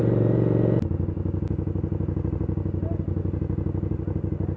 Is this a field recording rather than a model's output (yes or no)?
yes